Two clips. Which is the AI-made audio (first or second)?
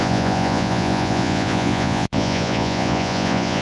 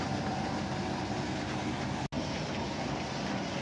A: first